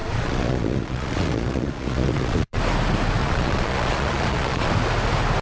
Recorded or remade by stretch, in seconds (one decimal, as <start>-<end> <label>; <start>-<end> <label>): 0.0-2.6 remade; 2.6-3.2 recorded; 3.2-4.7 remade; 4.7-5.4 recorded